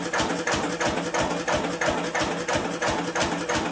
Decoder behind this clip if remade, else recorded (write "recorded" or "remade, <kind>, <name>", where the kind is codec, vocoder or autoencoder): recorded